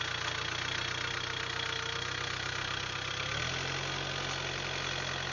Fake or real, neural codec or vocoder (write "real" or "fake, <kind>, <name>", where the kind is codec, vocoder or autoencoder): real